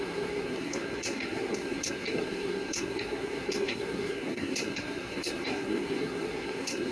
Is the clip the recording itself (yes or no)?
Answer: no